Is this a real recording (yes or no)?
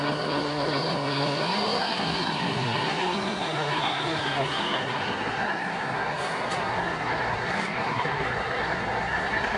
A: no